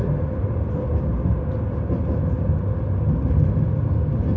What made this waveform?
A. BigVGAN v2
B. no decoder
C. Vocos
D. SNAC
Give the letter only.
B